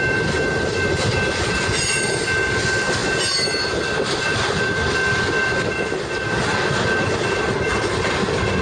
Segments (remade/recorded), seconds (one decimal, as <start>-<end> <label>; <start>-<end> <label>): 0.0-8.6 recorded